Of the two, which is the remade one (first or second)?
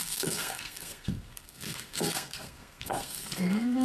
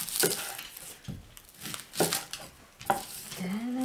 first